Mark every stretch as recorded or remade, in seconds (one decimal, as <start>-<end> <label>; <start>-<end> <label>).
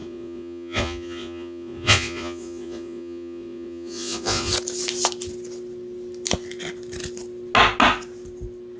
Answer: 0.0-4.5 remade; 4.5-8.8 recorded